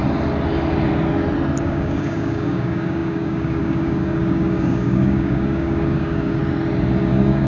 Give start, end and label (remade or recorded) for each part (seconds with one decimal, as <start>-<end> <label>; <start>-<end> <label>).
0.0-1.6 recorded; 1.6-6.4 remade; 6.4-7.0 recorded; 7.0-7.5 remade